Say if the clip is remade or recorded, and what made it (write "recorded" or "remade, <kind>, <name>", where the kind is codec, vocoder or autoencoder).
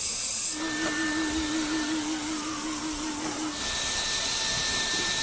recorded